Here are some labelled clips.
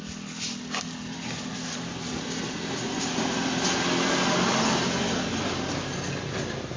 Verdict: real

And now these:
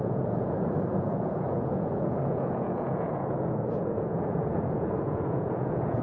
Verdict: fake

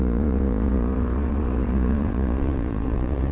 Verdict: fake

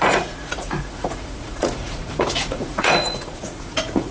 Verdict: fake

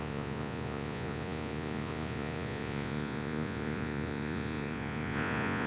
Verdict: fake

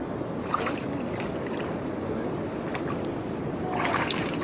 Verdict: real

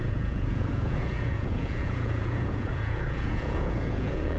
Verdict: fake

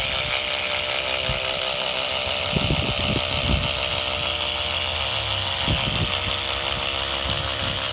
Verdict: real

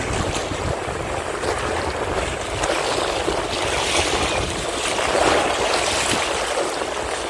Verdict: real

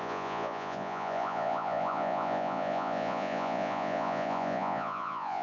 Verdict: fake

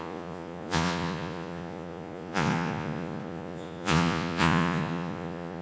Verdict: fake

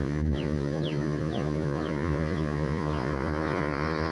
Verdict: fake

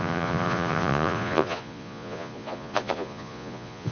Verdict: fake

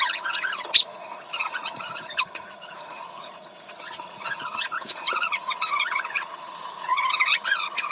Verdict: fake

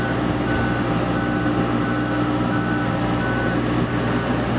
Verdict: real